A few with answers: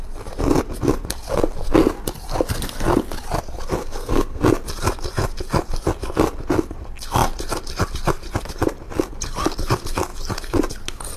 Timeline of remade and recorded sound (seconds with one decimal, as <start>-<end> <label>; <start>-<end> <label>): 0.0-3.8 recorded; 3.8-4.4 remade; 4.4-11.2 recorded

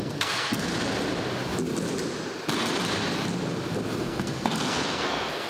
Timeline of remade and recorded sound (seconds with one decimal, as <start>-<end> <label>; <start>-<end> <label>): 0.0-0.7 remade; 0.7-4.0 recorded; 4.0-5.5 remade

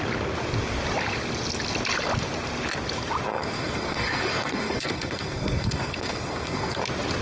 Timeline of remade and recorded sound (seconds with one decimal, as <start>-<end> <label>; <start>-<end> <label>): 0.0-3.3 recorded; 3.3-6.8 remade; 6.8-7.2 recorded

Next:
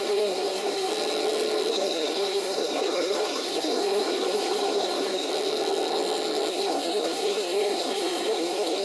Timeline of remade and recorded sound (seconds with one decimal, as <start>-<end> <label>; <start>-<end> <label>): 0.0-0.9 remade; 0.9-1.7 recorded; 1.7-5.3 remade; 5.3-6.5 recorded; 6.5-8.8 remade